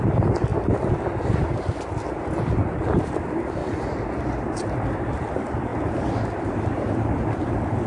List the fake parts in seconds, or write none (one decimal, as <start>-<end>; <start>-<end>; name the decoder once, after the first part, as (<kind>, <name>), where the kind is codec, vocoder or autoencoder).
0.0-0.5 (vocoder, BigVGAN v2); 1.0-3.6; 4.6-5.7; 6.5-7.9